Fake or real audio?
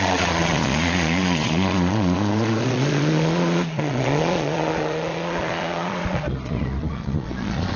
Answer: fake